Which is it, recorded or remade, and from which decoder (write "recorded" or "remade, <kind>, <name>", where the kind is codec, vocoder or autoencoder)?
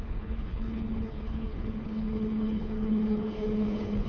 remade, codec, HILCodec